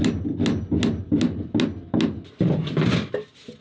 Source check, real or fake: real